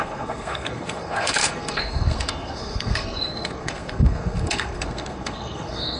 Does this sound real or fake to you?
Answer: fake